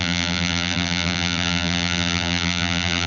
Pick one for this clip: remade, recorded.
remade